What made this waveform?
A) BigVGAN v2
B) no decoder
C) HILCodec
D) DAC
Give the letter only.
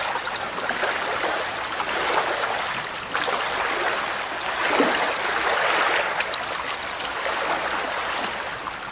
B